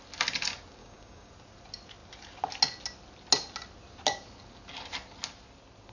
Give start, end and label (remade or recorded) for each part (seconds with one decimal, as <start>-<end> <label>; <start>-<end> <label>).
0.0-0.8 recorded; 0.8-1.3 remade; 1.3-5.9 recorded